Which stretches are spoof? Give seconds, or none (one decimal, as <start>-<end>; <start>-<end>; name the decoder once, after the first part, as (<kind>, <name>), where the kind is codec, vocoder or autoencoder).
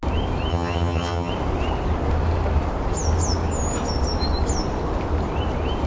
0.5-1.3 (vocoder, HiFi-GAN)